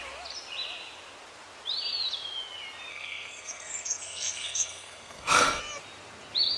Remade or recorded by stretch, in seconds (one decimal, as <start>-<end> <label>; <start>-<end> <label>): 0.0-2.9 recorded; 2.9-5.6 remade; 5.6-6.6 recorded